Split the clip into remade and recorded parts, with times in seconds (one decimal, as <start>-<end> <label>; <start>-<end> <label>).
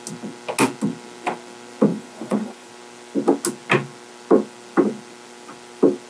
0.0-1.9 recorded; 1.9-2.7 remade; 2.7-6.1 recorded